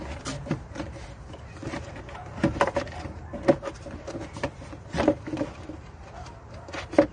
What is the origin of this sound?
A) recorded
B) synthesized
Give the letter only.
A